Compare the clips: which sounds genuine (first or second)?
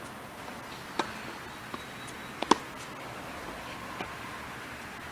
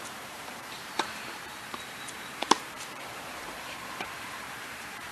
first